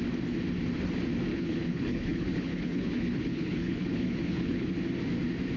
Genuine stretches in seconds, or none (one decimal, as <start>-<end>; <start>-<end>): 0.0-1.3; 4.7-5.6

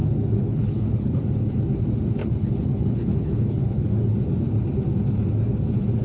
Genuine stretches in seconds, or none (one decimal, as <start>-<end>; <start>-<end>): 1.2-2.2; 3.9-6.0

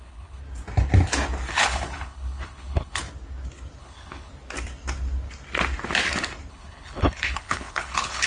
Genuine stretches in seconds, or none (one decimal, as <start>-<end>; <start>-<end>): 0.4-1.5; 3.0-3.8; 4.3-6.5

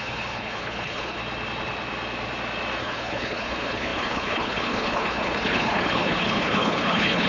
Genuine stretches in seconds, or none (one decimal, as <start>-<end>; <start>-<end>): 1.2-2.8

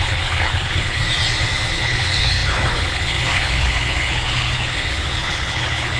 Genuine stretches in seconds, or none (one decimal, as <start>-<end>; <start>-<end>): 1.0-1.7